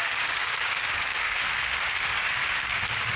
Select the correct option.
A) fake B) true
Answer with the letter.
A